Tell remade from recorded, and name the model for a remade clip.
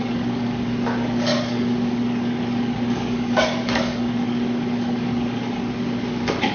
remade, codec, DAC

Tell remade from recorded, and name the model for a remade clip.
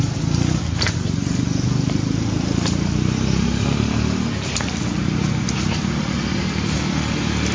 recorded